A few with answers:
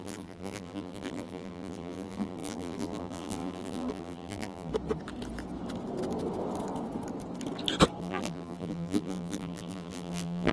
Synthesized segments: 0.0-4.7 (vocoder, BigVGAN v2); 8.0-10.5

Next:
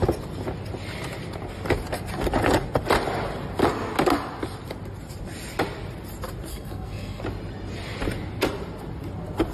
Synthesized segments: 6.5-7.2 (codec, SNAC)

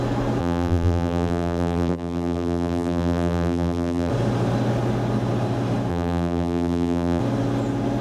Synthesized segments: 0.4-4.1 (vocoder, BigVGAN v2); 5.9-7.2

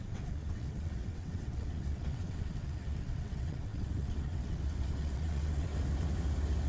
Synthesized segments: 0.0-5.7 (vocoder, WaveNeXt)

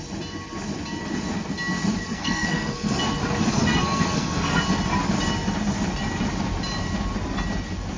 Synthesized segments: 2.0-3.0 (codec, SNAC); 3.5-4.6